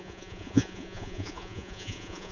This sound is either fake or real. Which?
fake